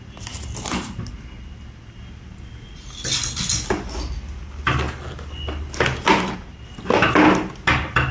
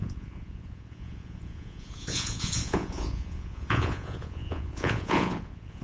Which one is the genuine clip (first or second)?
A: first